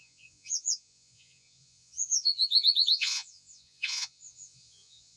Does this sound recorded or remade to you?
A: remade